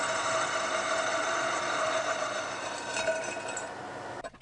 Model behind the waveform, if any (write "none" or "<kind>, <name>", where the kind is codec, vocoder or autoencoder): none